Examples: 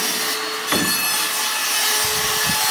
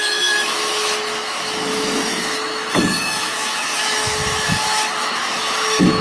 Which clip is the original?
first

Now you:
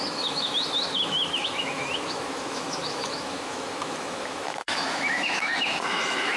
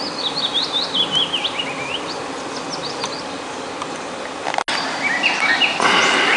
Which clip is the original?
second